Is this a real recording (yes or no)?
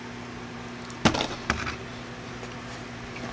yes